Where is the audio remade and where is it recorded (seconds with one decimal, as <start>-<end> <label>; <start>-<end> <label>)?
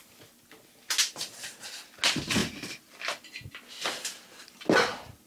0.0-5.3 recorded